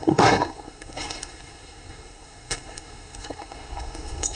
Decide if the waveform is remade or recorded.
remade